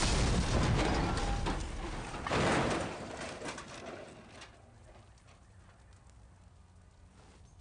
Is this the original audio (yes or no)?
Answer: yes